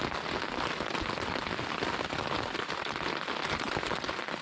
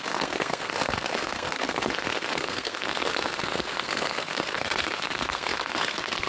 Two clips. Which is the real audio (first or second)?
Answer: first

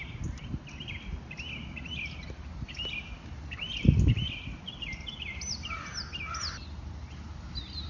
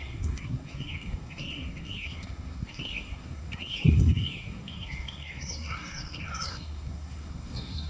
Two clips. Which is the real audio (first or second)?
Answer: first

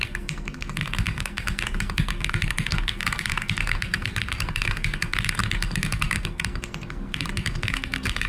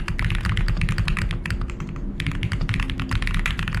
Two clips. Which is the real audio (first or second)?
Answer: second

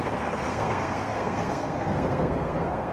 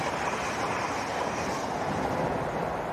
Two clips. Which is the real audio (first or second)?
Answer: second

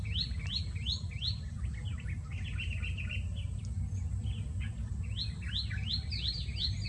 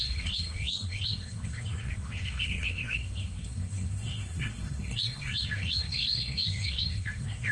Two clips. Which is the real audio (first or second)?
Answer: first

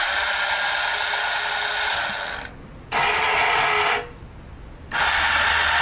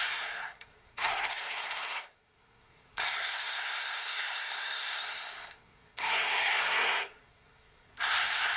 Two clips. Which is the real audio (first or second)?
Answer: first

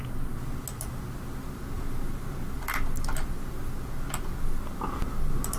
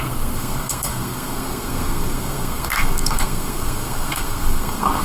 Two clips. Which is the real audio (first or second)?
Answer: first